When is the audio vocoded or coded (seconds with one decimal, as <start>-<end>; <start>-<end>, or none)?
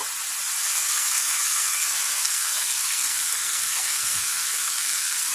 0.6-5.3